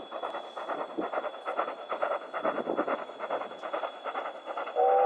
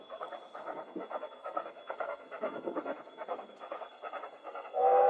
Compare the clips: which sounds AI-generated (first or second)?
second